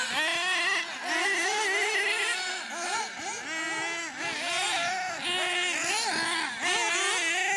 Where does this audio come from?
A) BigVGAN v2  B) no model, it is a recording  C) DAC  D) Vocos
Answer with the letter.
B